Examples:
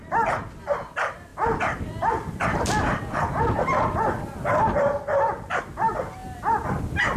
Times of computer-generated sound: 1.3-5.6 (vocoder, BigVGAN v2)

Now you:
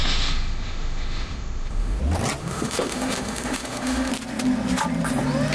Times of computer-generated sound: 0.0-2.0 (autoencoder, DAC-VAE); 2.4-4.1